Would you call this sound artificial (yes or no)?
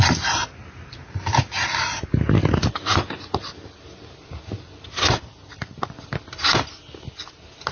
no